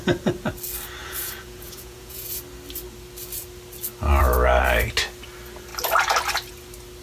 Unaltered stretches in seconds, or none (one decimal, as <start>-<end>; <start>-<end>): 0.0-1.0; 2.4-7.0